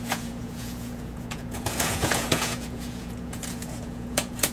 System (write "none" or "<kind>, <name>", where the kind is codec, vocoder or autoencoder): vocoder, Vocos